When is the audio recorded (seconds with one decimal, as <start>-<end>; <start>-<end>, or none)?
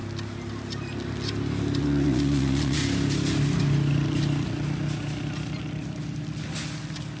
0.0-1.8; 2.8-7.2